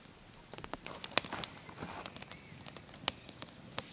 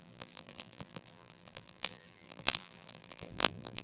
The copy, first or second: second